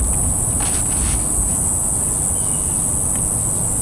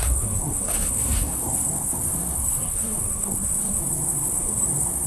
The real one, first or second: first